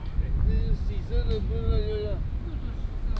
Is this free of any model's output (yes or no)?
yes